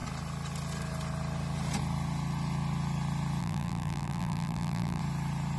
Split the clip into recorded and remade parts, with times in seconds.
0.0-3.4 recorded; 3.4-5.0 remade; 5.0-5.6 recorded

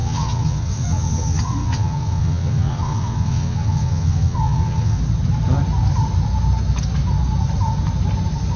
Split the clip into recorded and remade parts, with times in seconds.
0.0-5.0 remade; 5.0-8.6 recorded

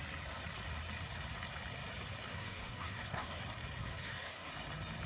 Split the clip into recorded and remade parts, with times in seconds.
0.0-2.3 recorded; 2.3-3.4 remade; 3.4-3.8 recorded; 3.8-4.5 remade; 4.5-5.1 recorded

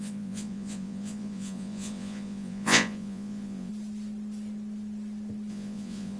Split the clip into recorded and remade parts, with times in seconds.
0.0-3.7 remade; 3.7-5.5 recorded; 5.5-6.2 remade

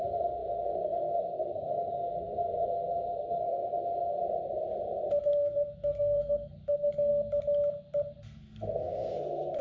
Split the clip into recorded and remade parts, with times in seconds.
0.0-4.2 remade; 4.2-5.2 recorded; 5.2-7.1 remade; 7.1-8.2 recorded; 8.2-9.6 remade

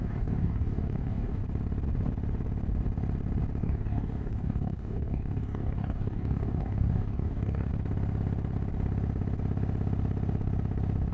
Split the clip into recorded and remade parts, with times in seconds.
0.0-1.4 remade; 1.4-3.6 recorded; 3.6-7.7 remade; 7.7-11.1 recorded

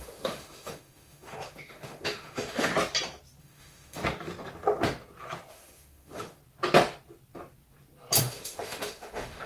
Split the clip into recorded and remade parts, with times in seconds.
0.0-2.7 remade; 2.7-3.4 recorded; 3.4-4.0 remade; 4.0-5.5 recorded; 5.5-6.4 remade; 6.4-8.2 recorded; 8.2-9.5 remade

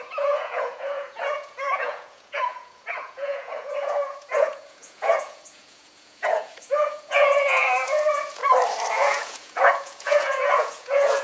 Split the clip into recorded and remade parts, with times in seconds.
0.0-8.4 remade; 8.4-8.9 recorded; 8.9-11.2 remade